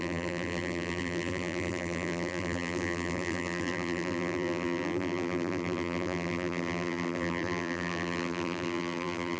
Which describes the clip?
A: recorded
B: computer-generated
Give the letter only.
B